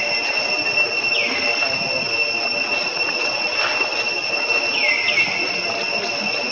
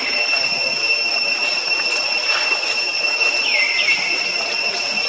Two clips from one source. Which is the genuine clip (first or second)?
first